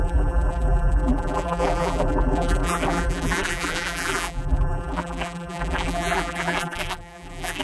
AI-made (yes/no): yes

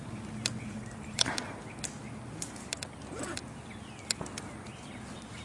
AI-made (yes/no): no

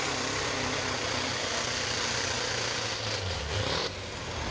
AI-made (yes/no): yes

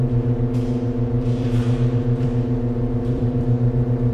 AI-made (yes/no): yes